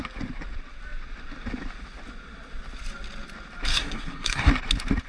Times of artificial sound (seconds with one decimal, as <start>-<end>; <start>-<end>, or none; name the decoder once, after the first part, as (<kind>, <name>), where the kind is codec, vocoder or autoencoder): 3.7-4.5 (codec, SNAC)